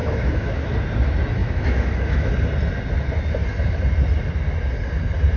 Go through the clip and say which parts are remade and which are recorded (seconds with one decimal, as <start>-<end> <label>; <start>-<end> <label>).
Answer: 0.0-0.7 remade; 0.7-1.4 recorded; 1.4-2.3 remade; 2.3-5.4 recorded